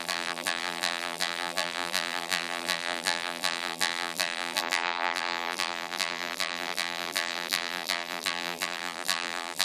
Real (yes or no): no